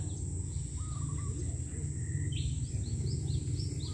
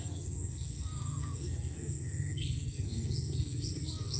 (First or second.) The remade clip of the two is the second